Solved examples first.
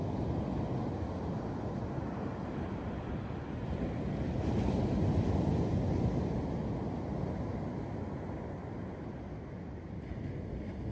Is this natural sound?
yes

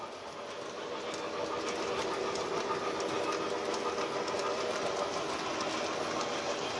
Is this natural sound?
yes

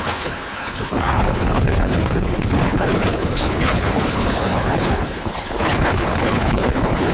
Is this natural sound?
no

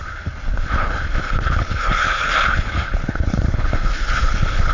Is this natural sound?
no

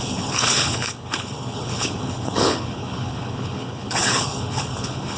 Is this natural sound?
no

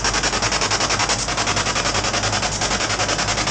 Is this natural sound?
yes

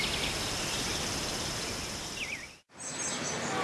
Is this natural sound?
yes